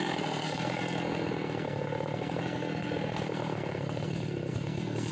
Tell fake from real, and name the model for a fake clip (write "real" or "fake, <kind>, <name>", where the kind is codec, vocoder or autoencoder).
fake, codec, SNAC